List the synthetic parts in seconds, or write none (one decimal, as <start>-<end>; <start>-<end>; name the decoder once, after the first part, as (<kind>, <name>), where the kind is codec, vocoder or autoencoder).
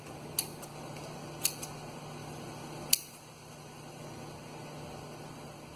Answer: 2.2-4.2 (vocoder, BigVGAN v2)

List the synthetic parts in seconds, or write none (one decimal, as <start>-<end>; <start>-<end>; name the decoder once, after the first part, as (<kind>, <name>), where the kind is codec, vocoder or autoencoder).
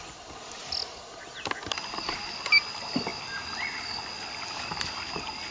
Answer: none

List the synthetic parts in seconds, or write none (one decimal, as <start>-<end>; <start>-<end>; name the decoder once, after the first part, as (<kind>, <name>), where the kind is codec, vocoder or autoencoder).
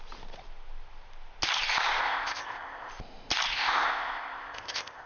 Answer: 2.0-2.9 (codec, ZipCodec); 3.5-5.1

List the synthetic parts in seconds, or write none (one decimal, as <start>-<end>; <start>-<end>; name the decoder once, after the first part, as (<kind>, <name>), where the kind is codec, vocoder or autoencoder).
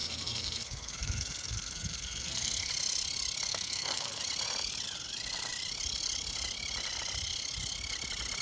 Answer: 0.0-2.7 (codec, SNAC); 3.5-4.2